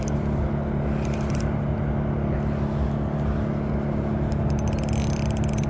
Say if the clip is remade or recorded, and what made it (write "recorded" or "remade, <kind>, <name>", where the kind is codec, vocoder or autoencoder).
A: recorded